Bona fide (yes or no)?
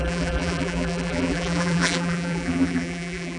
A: no